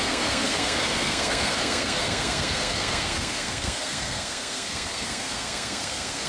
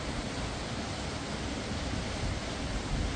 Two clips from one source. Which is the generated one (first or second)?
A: first